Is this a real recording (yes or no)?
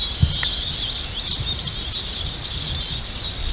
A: yes